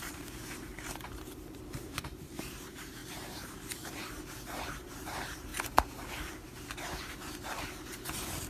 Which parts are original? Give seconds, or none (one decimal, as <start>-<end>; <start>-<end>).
none